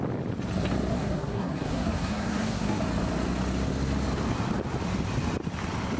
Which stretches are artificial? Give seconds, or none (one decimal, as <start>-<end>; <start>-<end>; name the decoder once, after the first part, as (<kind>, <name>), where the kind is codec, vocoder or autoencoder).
0.9-2.8 (codec, SNAC)